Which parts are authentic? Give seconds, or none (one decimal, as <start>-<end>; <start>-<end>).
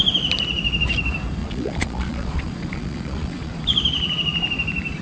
0.0-1.4; 3.5-5.0